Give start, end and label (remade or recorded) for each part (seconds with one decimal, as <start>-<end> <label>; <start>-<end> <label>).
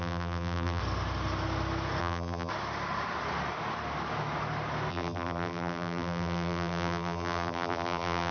0.0-0.8 remade; 0.8-2.0 recorded; 2.0-2.5 remade; 2.5-4.9 recorded; 4.9-8.3 remade